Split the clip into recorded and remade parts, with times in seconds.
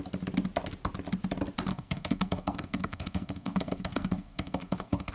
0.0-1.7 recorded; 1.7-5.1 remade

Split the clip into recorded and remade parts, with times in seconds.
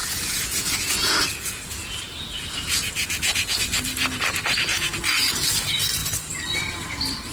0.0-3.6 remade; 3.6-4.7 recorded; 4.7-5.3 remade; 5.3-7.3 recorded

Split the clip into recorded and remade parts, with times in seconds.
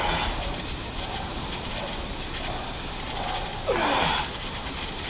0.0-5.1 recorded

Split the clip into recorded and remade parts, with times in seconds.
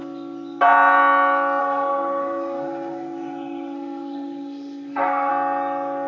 0.0-1.6 recorded; 1.6-5.3 remade; 5.3-6.1 recorded